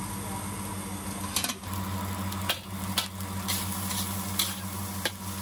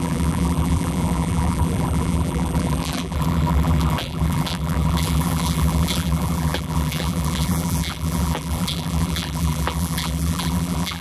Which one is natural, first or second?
first